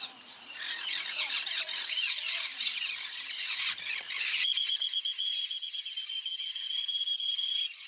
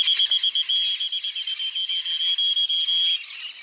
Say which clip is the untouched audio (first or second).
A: second